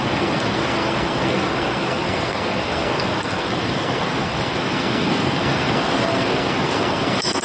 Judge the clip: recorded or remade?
remade